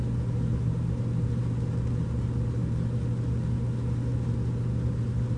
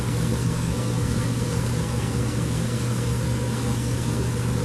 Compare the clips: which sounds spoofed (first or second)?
second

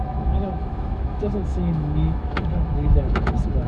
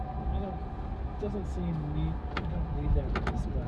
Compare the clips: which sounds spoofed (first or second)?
first